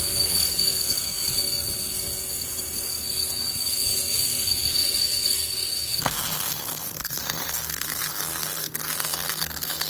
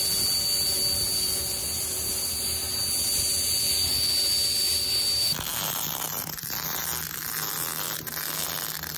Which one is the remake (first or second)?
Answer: first